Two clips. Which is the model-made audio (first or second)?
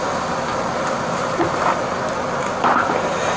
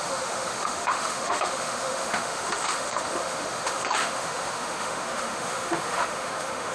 second